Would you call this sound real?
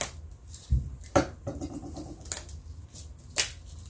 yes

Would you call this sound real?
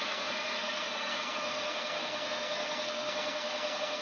no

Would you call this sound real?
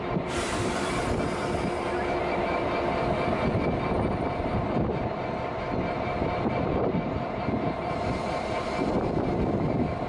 no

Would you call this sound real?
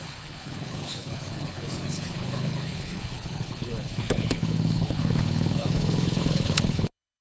no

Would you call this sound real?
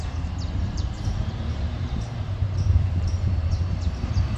no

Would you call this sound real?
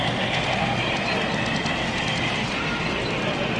yes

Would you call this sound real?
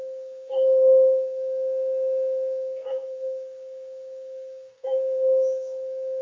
no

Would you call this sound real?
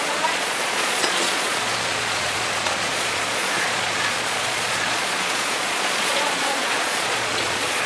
no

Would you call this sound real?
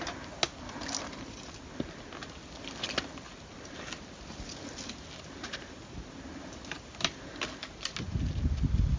yes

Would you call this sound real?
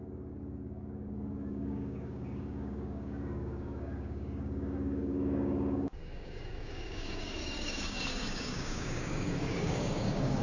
no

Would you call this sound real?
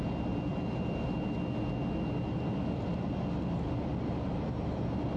yes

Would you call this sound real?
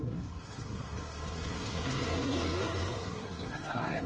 no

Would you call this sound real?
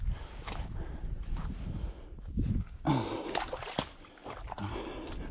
yes